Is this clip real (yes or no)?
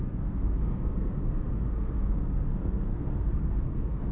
no